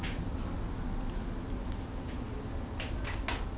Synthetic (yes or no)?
no